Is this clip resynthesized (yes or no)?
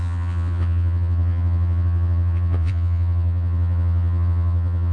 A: yes